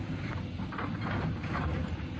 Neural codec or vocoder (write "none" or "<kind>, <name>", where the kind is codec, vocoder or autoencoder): none